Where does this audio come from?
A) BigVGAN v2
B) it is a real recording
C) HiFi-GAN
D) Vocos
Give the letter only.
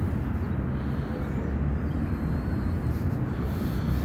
B